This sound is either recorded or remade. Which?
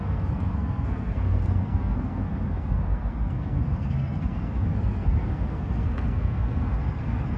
remade